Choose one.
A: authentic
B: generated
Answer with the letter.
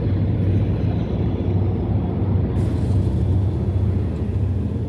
A